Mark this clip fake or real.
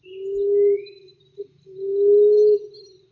real